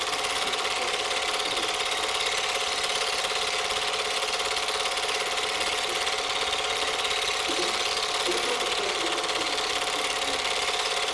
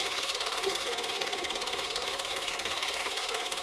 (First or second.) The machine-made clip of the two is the second